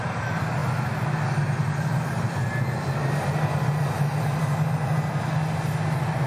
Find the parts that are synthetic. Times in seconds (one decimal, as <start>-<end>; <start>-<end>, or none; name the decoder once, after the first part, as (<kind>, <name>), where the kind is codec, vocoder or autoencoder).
none